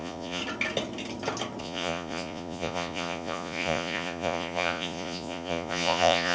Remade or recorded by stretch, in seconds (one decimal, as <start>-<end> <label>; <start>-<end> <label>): 0.0-0.4 remade; 0.4-1.6 recorded; 1.6-6.3 remade